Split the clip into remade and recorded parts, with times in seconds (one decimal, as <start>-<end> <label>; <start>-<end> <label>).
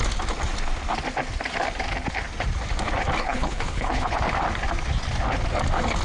0.0-3.2 recorded; 3.2-4.2 remade; 4.2-6.0 recorded